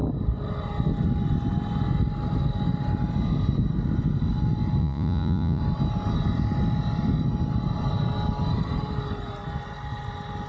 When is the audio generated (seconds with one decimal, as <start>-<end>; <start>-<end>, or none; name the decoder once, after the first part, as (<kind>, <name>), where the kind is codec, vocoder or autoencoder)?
4.8-5.6 (vocoder, Vocos)